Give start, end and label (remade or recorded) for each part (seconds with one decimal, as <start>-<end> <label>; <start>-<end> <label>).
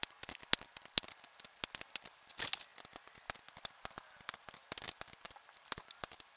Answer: 0.0-6.4 recorded